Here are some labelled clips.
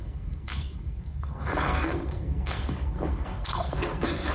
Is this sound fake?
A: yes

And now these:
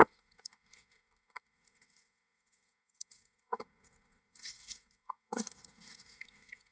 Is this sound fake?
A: yes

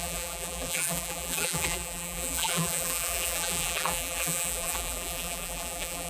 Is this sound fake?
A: yes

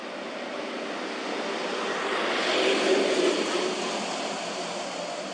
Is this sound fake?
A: no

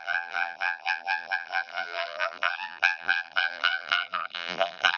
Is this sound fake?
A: yes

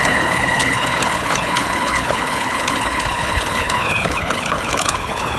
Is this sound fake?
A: yes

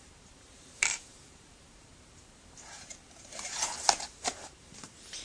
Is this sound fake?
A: yes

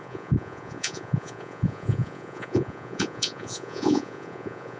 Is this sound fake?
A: yes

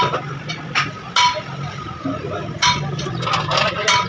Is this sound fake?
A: no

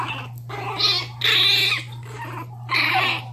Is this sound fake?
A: no